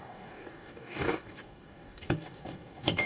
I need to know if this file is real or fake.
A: fake